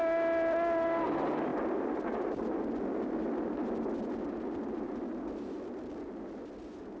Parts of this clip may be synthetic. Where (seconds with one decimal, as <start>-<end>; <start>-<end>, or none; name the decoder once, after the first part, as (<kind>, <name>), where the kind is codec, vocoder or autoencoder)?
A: none